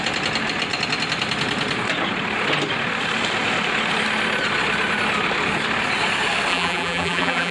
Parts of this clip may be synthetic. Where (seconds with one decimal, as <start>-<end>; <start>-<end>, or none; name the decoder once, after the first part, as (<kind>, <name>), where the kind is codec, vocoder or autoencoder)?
6.5-7.5 (vocoder, BigVGAN v2)